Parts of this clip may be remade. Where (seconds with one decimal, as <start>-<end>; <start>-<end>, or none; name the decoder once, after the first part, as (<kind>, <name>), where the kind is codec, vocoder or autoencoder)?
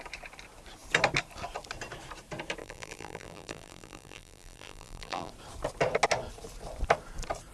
2.6-5.3 (vocoder, BigVGAN v2)